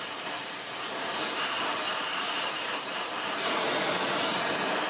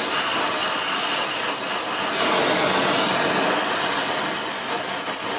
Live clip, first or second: second